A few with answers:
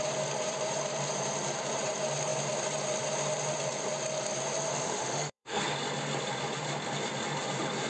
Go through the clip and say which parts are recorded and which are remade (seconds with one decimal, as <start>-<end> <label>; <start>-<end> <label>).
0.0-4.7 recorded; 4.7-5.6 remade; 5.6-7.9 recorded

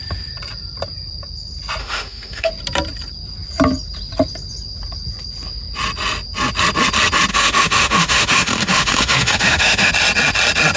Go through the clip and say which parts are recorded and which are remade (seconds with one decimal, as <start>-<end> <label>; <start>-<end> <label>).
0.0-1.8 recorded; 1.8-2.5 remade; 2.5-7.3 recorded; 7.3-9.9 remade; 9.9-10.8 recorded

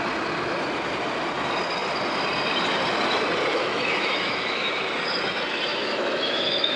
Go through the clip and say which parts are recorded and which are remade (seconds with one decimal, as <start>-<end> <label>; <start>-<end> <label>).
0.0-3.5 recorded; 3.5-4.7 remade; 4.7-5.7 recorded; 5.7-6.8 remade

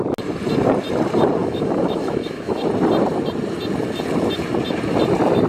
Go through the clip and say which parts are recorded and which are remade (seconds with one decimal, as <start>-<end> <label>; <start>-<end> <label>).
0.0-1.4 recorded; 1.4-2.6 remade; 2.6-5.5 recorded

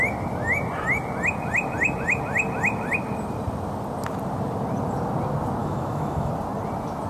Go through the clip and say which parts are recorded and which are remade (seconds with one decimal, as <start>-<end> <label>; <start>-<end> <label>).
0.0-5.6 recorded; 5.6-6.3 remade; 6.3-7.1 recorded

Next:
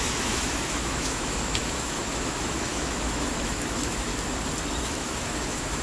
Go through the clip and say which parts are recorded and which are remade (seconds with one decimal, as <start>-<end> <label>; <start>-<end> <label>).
0.0-4.1 remade; 4.1-4.8 recorded; 4.8-5.8 remade

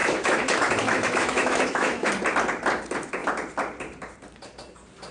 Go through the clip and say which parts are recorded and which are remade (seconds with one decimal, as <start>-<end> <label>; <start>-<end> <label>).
0.0-2.1 remade; 2.1-5.1 recorded

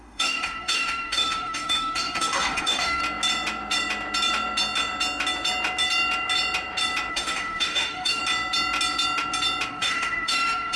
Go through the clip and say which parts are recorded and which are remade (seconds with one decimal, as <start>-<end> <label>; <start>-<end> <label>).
0.0-3.0 remade; 3.0-7.1 recorded; 7.1-8.2 remade; 8.2-9.7 recorded; 9.7-10.8 remade